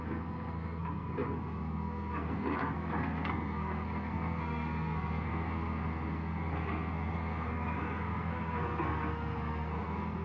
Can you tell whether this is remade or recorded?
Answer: remade